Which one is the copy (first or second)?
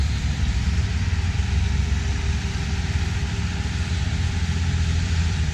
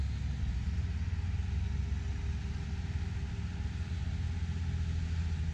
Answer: first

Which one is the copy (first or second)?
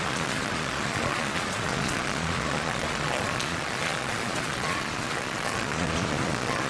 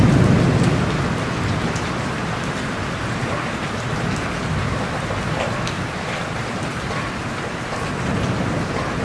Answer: first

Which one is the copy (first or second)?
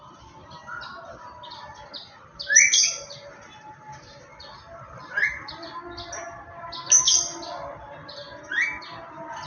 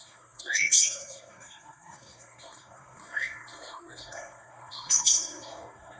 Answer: second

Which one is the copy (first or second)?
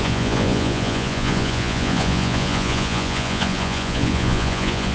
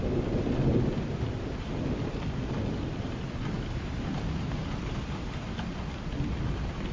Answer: first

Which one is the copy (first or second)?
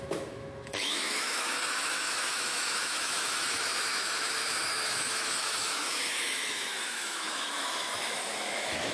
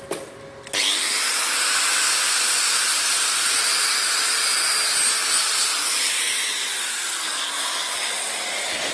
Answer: first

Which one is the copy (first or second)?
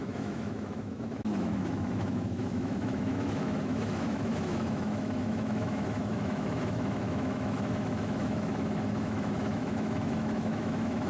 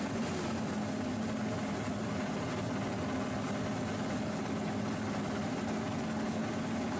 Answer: first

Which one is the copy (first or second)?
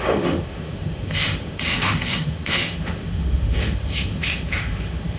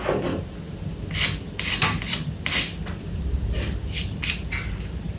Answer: first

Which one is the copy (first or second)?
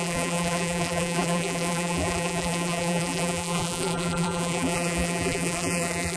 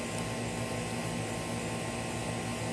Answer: first